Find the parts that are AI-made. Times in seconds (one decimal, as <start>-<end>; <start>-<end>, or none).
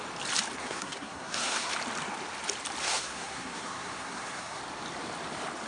0.6-1.7; 2.8-4.6